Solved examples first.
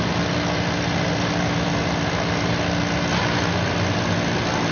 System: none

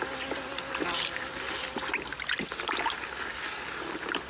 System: none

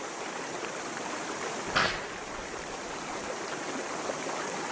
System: none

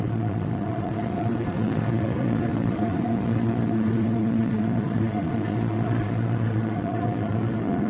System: vocoder, Vocos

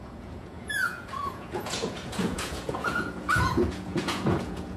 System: vocoder, Vocos